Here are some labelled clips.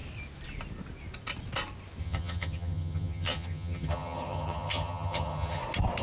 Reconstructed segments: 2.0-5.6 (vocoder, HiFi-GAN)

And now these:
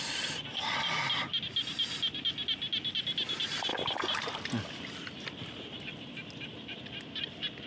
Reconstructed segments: none

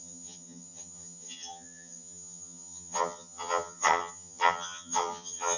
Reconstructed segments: 0.0-5.6 (vocoder, HiFi-GAN)